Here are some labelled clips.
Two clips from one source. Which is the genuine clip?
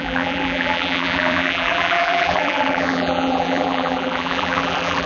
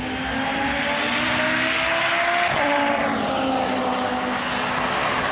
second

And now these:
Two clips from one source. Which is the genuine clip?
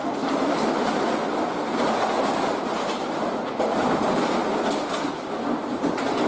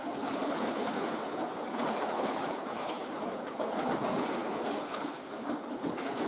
first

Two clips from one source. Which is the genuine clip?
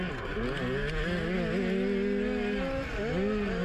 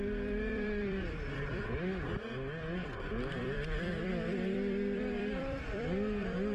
first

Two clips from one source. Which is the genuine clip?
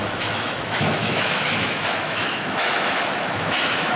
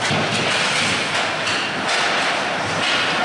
second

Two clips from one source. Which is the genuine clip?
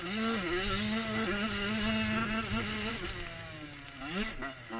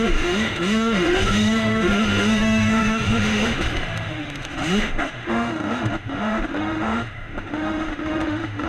first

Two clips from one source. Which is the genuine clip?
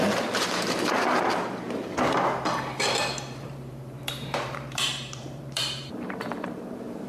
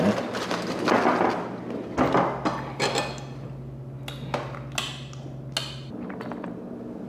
second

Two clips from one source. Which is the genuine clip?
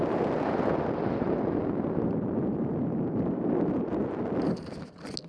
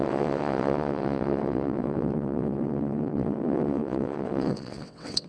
first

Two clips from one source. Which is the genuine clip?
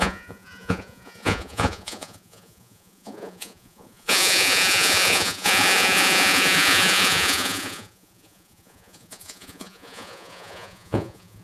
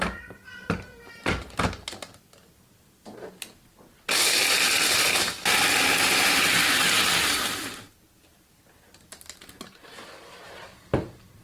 second